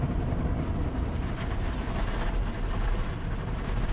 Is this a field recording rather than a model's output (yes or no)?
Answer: yes